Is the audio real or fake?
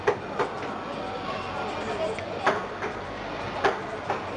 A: real